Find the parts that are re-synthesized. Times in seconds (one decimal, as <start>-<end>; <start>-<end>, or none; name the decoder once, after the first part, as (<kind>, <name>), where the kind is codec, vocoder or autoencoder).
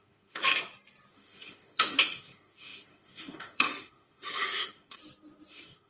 0.0-0.5 (autoencoder, DAC-VAE); 1.1-5.0; 5.5-5.9